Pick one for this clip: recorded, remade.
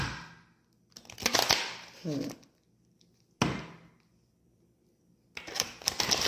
recorded